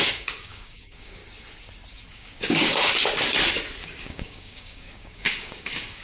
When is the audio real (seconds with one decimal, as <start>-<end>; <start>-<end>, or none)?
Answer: 1.2-2.1; 2.7-3.8